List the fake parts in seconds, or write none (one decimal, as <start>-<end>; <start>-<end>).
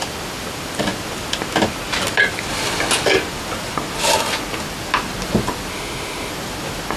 5.7-6.3